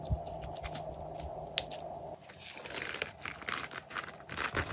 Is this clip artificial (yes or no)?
no